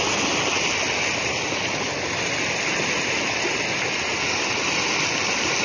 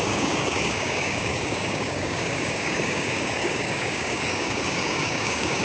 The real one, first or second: first